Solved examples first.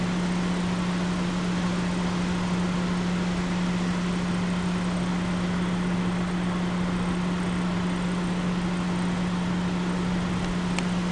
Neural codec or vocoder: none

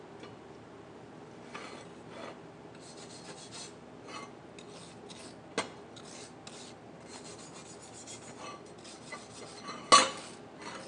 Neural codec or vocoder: none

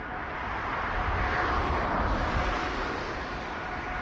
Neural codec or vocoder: none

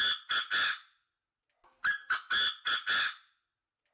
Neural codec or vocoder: none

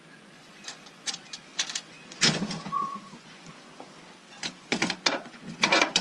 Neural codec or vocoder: vocoder, Vocos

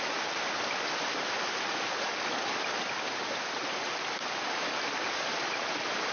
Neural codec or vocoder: none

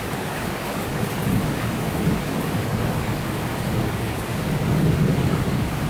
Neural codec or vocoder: codec, DAC